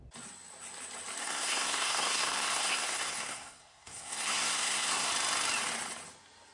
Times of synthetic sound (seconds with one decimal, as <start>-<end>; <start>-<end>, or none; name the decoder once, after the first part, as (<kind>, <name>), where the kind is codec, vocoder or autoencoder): 1.2-5.1 (codec, SNAC)